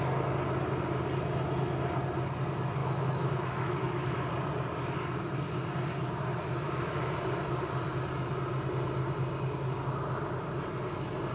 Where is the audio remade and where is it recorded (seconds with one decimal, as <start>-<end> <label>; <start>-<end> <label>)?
0.0-2.8 recorded; 2.8-4.2 remade; 4.2-11.3 recorded

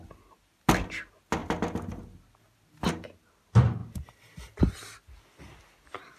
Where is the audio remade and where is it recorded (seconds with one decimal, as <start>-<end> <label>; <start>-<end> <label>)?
0.0-6.2 recorded